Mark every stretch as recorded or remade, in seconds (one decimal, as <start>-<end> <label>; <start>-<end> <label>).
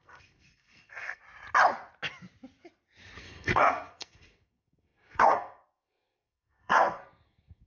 0.0-1.2 remade; 1.2-3.2 recorded; 3.2-7.7 remade